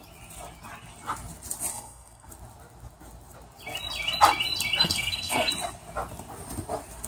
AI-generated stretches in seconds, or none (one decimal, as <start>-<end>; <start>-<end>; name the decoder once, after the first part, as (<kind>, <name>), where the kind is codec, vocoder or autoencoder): 1.7-2.3 (codec, SNAC); 4.8-5.5